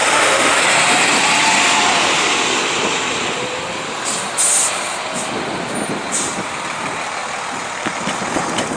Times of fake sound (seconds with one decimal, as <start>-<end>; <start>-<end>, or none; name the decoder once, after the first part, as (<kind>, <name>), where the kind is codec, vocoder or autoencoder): 0.0-0.6 (autoencoder, DAC-VAE)